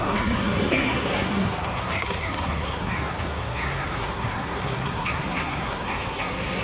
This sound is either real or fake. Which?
fake